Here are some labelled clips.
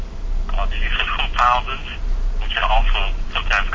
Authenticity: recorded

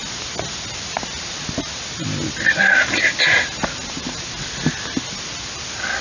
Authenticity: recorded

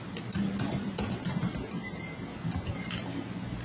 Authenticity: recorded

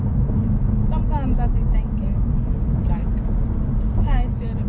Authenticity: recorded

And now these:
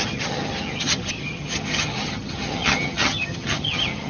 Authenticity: remade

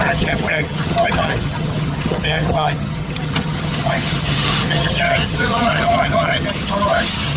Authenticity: remade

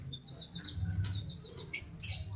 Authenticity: recorded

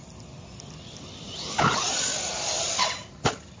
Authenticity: recorded